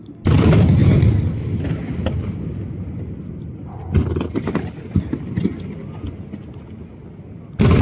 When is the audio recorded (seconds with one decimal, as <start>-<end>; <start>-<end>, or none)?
0.0-7.8